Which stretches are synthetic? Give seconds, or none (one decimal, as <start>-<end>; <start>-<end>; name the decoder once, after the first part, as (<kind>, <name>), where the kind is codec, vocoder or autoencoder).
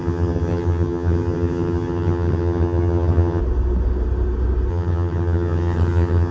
0.0-3.4 (vocoder, HiFi-GAN); 4.7-6.3